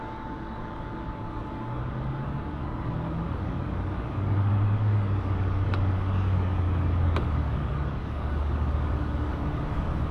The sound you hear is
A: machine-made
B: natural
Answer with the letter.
A